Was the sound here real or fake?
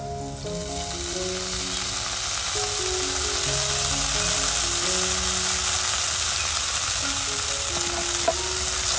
real